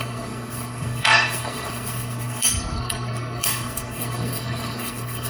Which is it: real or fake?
fake